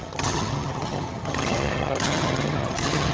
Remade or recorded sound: remade